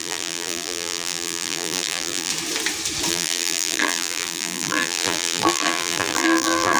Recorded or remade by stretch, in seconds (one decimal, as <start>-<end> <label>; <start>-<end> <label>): 0.0-2.3 remade; 2.3-3.1 recorded; 3.1-6.8 remade